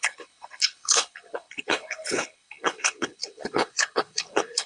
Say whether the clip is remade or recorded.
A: remade